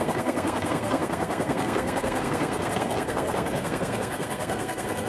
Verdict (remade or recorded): remade